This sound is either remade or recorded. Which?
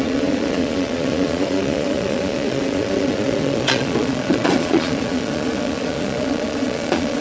remade